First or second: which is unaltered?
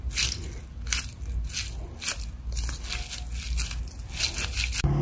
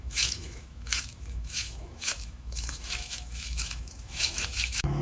first